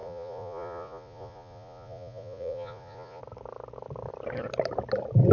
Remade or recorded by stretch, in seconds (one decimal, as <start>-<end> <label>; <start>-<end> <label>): 0.0-3.2 remade; 3.2-5.3 recorded